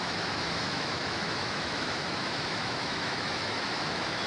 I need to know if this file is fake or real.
fake